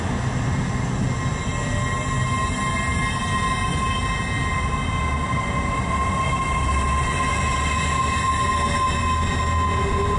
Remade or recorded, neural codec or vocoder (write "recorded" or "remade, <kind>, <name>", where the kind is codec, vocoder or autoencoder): recorded